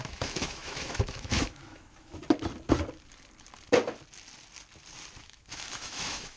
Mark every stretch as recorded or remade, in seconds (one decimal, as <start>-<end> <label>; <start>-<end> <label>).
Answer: 0.0-2.2 remade; 2.2-5.2 recorded; 5.2-6.4 remade